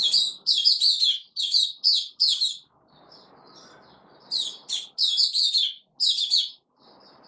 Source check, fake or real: real